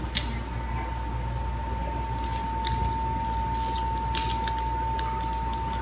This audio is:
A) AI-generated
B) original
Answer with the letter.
B